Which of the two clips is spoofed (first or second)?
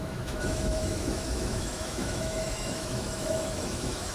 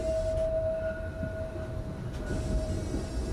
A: first